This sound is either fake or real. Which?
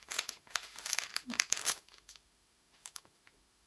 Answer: fake